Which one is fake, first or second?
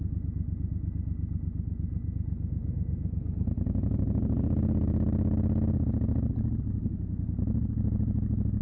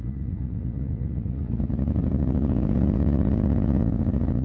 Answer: second